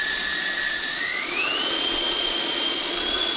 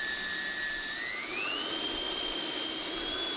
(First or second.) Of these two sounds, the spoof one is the first